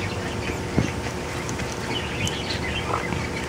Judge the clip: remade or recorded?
recorded